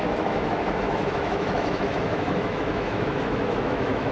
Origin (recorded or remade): remade